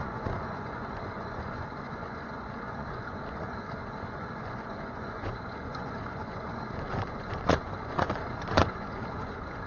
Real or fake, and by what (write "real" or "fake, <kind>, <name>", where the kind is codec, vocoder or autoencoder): fake, vocoder, Vocos